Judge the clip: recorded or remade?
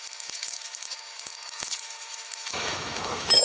remade